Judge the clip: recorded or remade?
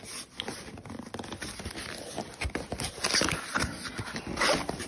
recorded